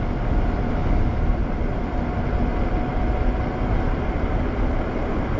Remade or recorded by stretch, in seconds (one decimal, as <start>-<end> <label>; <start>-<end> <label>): 0.0-5.4 recorded